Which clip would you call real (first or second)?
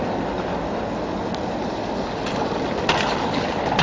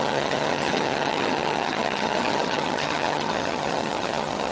first